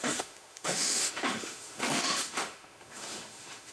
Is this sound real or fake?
fake